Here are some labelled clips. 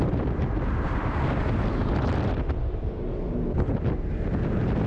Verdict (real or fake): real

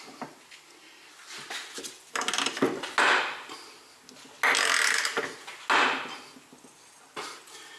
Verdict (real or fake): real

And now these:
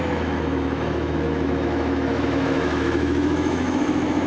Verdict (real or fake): fake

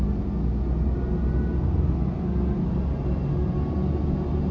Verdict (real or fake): real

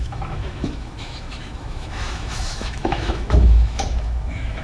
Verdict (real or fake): fake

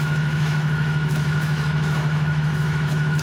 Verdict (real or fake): fake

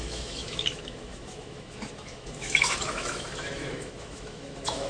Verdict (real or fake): fake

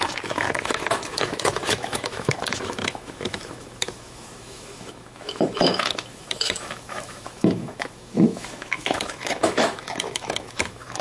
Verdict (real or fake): fake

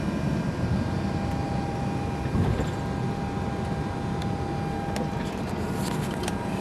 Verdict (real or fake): real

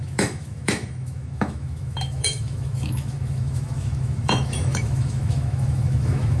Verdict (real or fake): fake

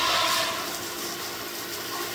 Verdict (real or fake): real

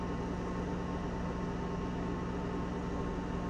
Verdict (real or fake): real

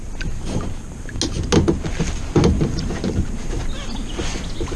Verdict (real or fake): real